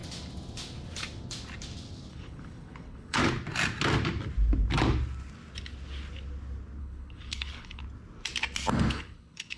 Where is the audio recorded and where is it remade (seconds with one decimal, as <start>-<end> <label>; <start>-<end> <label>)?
0.0-2.1 recorded; 2.1-3.2 remade; 3.2-6.8 recorded; 6.8-7.8 remade; 7.8-8.9 recorded; 8.9-9.6 remade